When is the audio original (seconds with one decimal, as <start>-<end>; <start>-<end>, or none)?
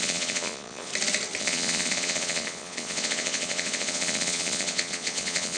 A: 0.9-1.4